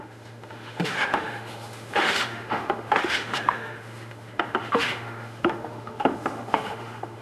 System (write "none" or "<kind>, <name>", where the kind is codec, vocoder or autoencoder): autoencoder, DAC-VAE